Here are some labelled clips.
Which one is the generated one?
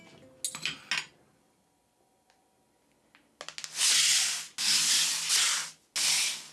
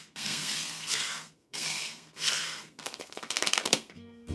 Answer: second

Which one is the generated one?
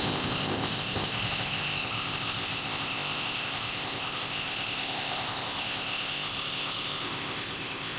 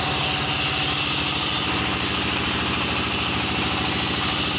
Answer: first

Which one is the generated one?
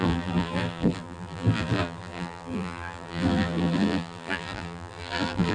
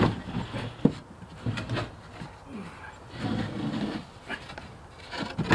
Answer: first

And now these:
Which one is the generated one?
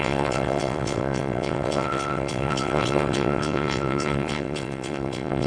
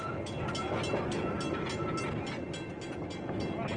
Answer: first